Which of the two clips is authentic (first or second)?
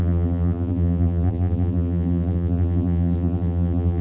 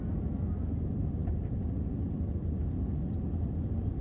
second